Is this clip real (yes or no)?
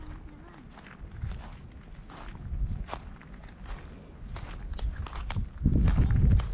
yes